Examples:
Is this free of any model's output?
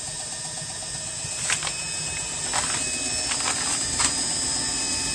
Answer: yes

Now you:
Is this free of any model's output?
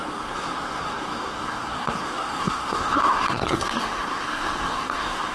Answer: no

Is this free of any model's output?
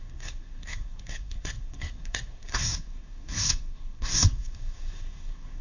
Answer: no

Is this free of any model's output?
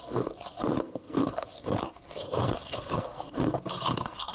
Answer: no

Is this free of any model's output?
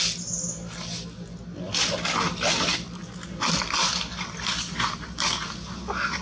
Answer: yes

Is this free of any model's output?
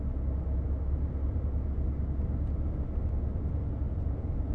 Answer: yes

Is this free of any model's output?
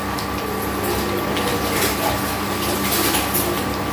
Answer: yes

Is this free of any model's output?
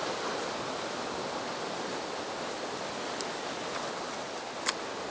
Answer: yes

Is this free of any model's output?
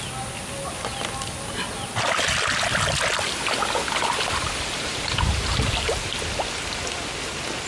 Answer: yes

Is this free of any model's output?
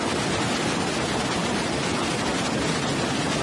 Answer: yes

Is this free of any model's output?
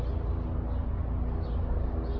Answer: yes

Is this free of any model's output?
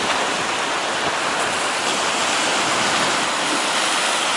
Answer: yes